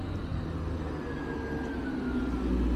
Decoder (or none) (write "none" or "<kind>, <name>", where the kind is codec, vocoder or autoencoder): none